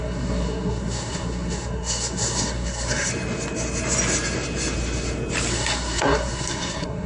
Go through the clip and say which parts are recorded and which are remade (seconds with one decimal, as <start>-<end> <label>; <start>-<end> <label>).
0.0-3.1 remade; 3.1-5.5 recorded; 5.5-7.1 remade